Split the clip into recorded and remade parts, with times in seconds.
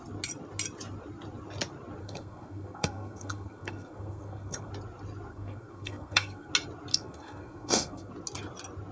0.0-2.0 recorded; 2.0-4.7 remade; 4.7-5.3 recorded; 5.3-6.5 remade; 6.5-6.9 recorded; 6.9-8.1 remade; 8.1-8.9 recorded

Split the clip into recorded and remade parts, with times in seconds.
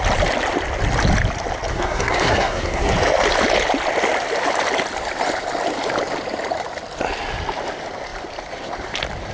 0.0-1.7 recorded; 1.7-2.9 remade; 2.9-9.3 recorded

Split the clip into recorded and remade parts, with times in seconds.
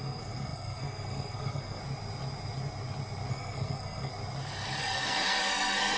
0.0-1.8 remade; 1.8-3.3 recorded; 3.3-4.1 remade; 4.1-4.8 recorded; 4.8-6.0 remade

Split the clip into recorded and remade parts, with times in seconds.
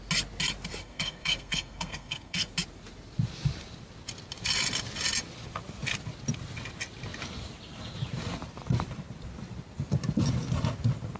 0.0-0.8 recorded; 0.8-2.5 remade; 2.5-11.2 recorded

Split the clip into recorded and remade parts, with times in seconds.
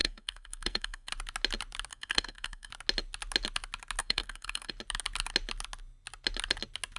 0.0-1.1 remade; 1.1-1.9 recorded; 1.9-2.7 remade; 2.7-4.0 recorded; 4.0-4.7 remade; 4.7-7.0 recorded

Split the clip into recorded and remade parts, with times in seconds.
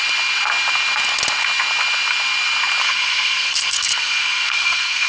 0.0-2.8 recorded; 2.8-5.1 remade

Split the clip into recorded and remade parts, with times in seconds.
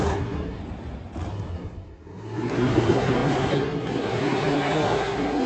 0.0-0.6 remade; 0.6-1.3 recorded; 1.3-5.5 remade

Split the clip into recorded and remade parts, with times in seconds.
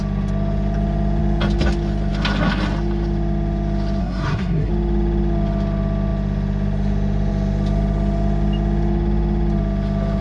0.0-4.0 recorded; 4.0-4.7 remade; 4.7-10.2 recorded